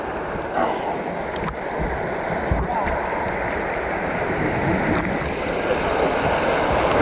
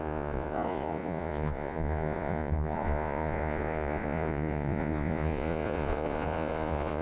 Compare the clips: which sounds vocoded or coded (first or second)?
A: second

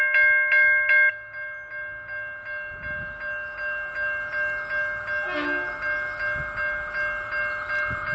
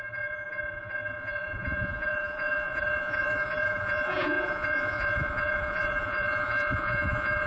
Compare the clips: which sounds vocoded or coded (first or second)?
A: second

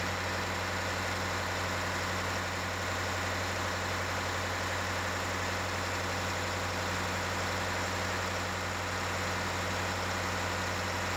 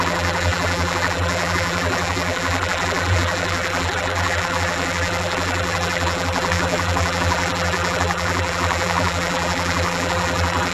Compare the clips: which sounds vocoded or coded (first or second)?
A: second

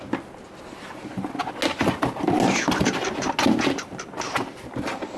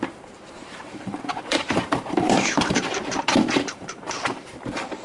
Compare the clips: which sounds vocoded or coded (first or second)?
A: second